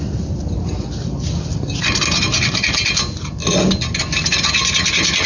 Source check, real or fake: real